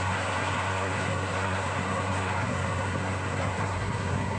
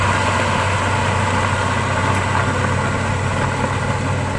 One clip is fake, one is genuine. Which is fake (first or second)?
first